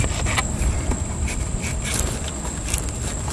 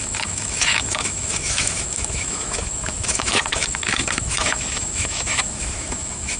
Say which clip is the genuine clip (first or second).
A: first